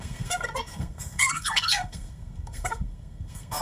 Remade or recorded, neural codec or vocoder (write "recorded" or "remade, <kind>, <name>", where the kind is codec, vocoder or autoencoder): remade, codec, SNAC